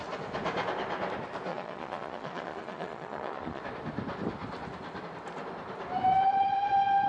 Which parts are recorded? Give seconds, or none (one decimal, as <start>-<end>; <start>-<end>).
0.0-1.5; 3.6-7.1